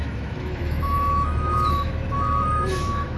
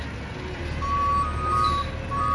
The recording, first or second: second